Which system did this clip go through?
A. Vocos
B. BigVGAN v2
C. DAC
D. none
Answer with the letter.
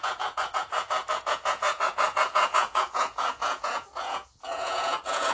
A